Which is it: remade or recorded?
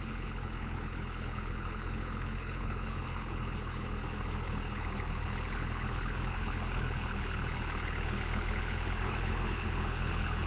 remade